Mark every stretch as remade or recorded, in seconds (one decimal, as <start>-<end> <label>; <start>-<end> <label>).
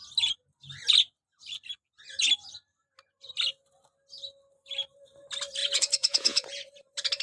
0.0-5.6 recorded; 5.6-6.6 remade; 6.6-7.2 recorded